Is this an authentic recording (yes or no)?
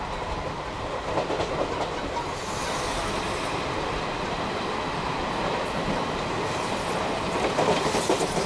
yes